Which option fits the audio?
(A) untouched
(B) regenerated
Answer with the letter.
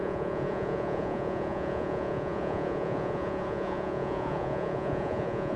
B